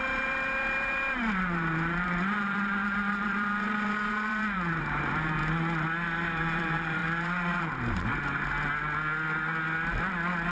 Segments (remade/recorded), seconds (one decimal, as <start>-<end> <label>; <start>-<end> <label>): 0.0-5.4 remade; 5.4-6.4 recorded; 6.4-8.1 remade; 8.1-10.5 recorded